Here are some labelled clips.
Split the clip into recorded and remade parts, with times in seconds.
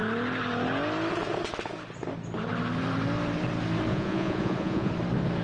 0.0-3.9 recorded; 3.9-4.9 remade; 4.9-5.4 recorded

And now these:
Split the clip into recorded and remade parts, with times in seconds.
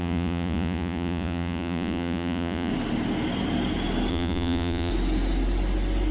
0.0-2.7 remade; 2.7-4.1 recorded; 4.1-4.9 remade; 4.9-6.1 recorded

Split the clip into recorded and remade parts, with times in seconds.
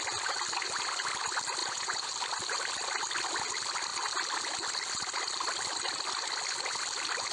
0.0-1.6 recorded; 1.6-2.1 remade; 2.1-7.3 recorded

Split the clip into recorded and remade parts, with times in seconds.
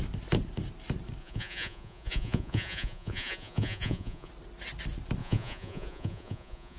0.0-1.2 recorded; 1.2-4.3 remade; 4.3-5.2 recorded; 5.2-6.8 remade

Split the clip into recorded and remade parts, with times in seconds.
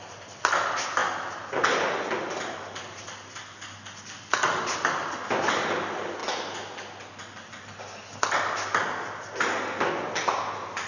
0.0-10.9 recorded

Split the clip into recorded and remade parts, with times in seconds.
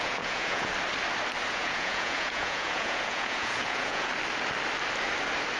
0.0-0.7 remade; 0.7-1.5 recorded; 1.5-4.1 remade; 4.1-5.6 recorded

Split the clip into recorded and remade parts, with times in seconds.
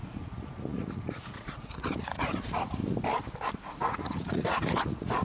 0.0-2.8 remade; 2.8-3.5 recorded; 3.5-5.2 remade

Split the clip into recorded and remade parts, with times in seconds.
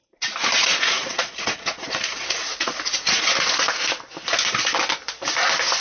0.0-0.6 recorded; 0.6-3.7 remade; 3.7-5.8 recorded